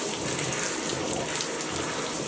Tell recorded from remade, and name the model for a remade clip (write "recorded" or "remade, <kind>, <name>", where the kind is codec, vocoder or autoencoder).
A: recorded